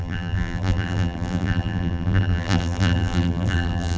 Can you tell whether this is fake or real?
fake